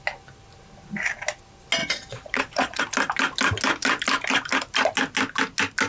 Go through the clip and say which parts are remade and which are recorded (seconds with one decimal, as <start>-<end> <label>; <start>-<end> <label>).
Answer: 0.0-1.8 recorded; 1.8-2.8 remade; 2.8-5.9 recorded